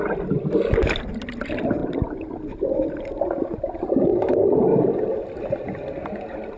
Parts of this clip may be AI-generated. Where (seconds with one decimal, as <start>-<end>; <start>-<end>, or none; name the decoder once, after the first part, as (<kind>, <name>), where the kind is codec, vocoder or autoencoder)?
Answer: none

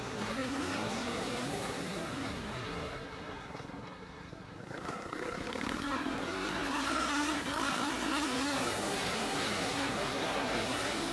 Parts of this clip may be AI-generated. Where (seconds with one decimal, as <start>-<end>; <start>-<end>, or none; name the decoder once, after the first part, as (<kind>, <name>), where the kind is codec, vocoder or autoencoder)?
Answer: 0.0-11.1 (codec, SNAC)

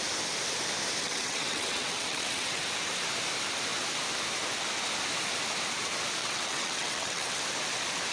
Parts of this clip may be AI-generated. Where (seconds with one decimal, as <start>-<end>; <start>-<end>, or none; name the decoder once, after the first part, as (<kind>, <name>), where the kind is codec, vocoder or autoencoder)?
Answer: 1.0-2.6 (vocoder, WaveNeXt); 6.2-7.4

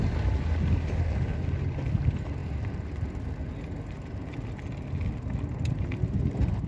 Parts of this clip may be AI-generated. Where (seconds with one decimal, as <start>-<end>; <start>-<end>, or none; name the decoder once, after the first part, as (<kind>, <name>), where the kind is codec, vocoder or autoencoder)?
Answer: none

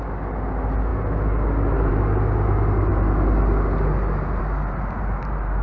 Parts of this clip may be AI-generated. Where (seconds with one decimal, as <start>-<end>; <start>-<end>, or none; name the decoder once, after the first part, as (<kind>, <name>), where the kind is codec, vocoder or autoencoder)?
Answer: none

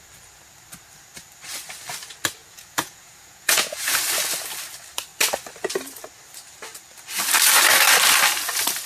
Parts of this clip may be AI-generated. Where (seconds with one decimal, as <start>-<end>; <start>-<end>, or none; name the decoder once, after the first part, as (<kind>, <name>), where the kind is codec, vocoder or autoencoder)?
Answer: 2.4-4.0 (vocoder, Vocos)

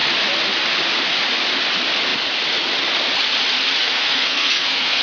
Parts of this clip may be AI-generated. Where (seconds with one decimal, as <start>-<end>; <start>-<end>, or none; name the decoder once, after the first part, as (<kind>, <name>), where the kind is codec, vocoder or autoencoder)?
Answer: 3.8-5.0 (codec, SNAC)

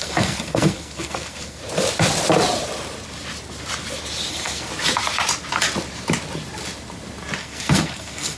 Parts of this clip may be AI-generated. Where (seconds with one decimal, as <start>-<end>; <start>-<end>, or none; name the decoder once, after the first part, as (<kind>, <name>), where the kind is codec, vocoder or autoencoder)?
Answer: 0.0-1.6 (codec, SNAC); 4.3-4.7; 7.4-8.4